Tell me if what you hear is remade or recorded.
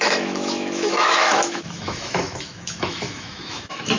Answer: remade